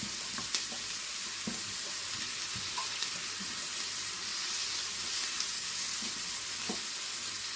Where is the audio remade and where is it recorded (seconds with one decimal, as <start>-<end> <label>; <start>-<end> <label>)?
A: 0.0-7.6 recorded